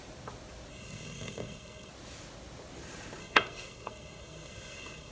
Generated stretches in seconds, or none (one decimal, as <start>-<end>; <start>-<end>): 0.7-1.9; 3.2-5.1